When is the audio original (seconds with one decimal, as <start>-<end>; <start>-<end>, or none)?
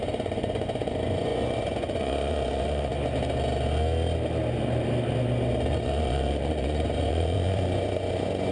2.9-5.7